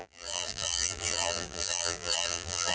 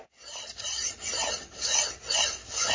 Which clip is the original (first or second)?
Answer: second